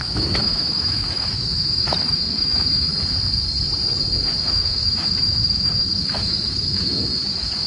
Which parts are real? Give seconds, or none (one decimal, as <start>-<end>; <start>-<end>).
2.9-4.4